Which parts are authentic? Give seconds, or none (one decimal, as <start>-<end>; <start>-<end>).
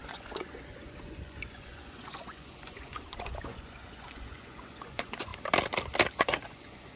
5.3-6.2